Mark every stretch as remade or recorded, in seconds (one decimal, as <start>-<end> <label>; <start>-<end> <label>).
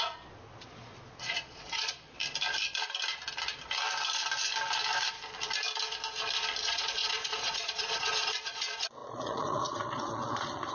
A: 0.0-2.2 remade; 2.2-6.6 recorded; 6.6-10.7 remade